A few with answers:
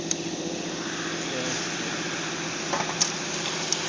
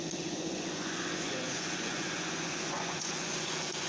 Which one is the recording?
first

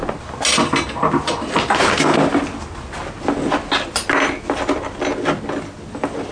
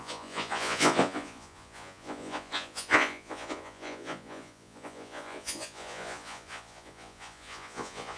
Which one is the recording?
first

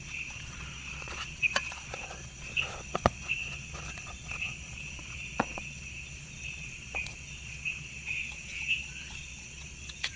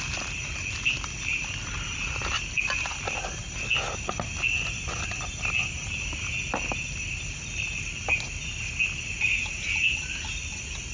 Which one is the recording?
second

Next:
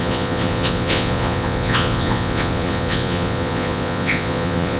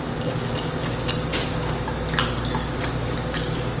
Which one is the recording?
second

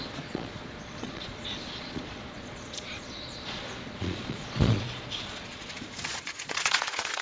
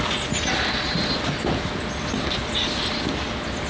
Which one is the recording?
second